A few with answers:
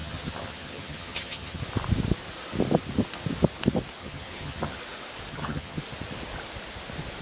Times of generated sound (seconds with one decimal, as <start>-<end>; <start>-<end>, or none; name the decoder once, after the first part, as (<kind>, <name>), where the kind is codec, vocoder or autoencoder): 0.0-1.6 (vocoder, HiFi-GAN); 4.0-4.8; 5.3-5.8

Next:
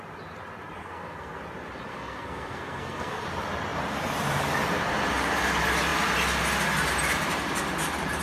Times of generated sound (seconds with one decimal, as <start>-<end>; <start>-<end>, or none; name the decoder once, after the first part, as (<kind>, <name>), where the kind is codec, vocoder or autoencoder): 0.8-1.4 (codec, SNAC); 1.9-3.2

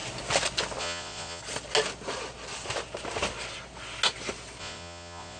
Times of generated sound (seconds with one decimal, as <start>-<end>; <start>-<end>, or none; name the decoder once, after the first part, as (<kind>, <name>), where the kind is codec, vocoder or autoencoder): 0.8-1.4 (vocoder, Vocos); 4.6-5.4

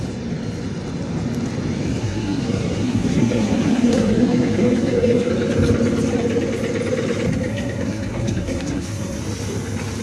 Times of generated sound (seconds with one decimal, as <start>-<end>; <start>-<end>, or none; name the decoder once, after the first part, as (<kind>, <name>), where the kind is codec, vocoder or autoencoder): 2.0-5.3 (codec, SNAC); 7.5-9.2